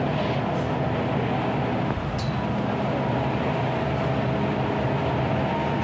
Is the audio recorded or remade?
recorded